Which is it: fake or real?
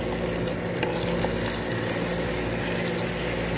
real